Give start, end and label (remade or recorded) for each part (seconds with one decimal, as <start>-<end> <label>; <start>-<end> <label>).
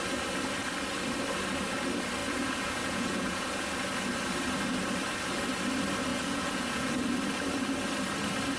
0.0-2.2 recorded; 2.2-3.7 remade; 3.7-6.1 recorded; 6.1-6.9 remade; 6.9-8.6 recorded